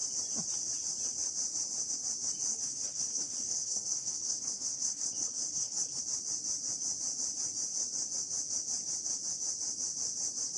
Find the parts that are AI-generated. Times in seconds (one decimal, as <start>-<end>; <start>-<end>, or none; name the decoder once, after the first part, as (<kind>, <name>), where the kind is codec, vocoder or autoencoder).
2.5-6.0 (codec, HILCodec)

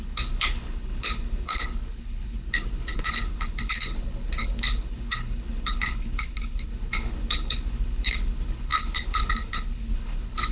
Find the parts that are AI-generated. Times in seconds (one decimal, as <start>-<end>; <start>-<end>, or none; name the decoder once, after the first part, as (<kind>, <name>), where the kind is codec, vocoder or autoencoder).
0.0-10.5 (codec, HILCodec)

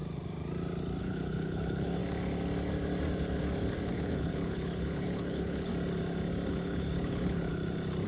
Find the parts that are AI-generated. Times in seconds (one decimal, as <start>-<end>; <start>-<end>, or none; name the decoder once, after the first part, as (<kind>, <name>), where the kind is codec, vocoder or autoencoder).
1.0-2.0 (codec, HILCodec); 3.9-5.7; 6.5-7.5

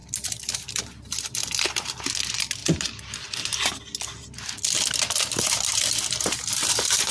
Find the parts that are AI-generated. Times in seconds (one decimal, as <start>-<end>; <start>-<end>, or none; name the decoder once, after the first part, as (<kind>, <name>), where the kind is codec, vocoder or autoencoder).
none

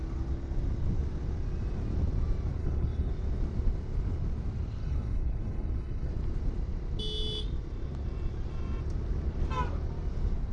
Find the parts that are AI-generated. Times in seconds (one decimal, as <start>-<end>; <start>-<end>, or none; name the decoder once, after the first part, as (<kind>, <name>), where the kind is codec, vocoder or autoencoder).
2.6-3.1 (codec, HILCodec); 4.8-6.1

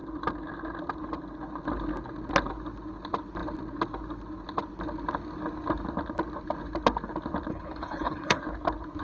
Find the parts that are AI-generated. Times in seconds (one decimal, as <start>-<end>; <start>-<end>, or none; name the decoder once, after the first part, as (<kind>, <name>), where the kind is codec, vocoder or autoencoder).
7.5-8.4 (codec, HILCodec)

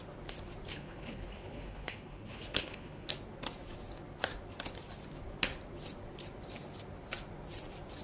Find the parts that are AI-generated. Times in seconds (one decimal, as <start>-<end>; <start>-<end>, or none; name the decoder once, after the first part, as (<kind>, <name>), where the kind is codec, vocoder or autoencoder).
0.7-3.1 (codec, HILCodec)

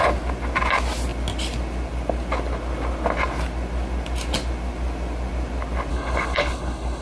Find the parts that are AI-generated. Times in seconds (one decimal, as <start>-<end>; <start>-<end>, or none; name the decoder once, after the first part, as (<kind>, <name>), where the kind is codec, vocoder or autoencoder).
5.9-7.0 (codec, HILCodec)